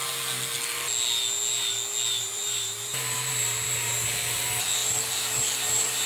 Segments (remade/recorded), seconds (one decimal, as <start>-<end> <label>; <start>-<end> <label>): 0.0-2.2 recorded; 2.2-6.1 remade